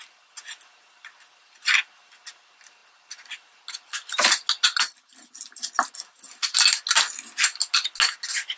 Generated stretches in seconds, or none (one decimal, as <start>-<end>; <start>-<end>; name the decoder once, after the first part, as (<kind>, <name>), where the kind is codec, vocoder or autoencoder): none